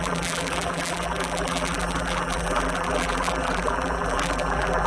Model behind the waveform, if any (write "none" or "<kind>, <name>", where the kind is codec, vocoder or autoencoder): vocoder, BigVGAN v2